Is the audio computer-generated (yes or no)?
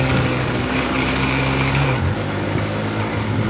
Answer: yes